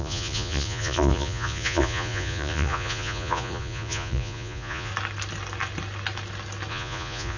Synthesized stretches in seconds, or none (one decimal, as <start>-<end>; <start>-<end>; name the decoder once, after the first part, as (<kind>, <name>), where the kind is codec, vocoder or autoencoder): 0.0-4.9 (vocoder, Vocos); 6.7-7.4